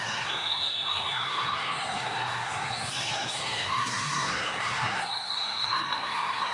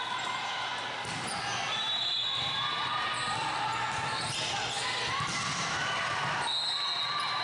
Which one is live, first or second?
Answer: second